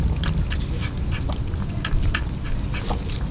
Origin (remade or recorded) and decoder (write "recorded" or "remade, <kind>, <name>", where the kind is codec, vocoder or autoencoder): recorded